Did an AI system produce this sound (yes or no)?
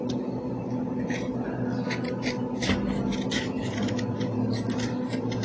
no